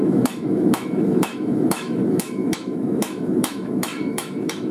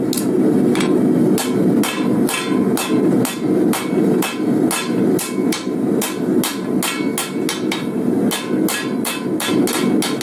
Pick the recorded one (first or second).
second